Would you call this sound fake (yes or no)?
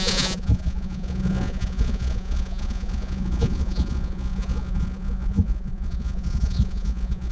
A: yes